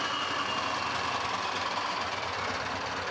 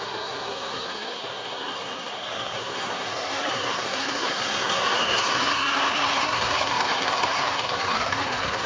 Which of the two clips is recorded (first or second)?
first